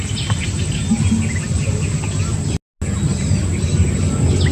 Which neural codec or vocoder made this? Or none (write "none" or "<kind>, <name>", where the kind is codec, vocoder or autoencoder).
none